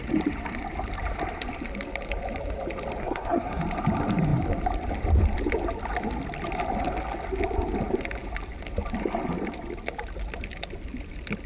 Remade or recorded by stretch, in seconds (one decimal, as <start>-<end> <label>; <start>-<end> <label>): 0.0-3.0 recorded; 3.0-3.6 remade; 3.6-11.5 recorded